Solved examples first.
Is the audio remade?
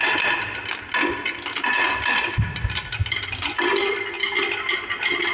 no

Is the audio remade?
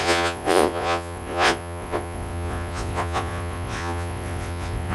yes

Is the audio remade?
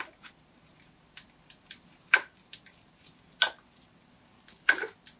no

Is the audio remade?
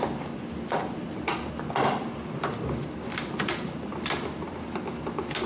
no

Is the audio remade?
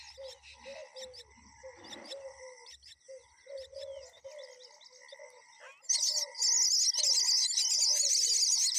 no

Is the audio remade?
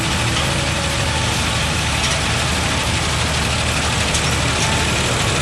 no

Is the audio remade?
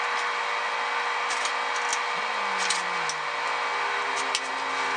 no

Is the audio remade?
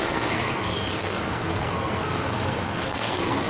yes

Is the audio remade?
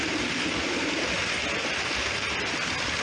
no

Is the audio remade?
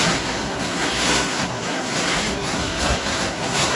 yes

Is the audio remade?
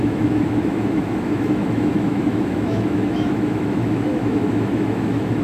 yes